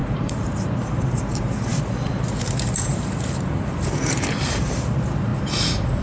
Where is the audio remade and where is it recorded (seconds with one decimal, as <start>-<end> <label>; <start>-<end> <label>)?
0.0-5.3 remade; 5.3-6.0 recorded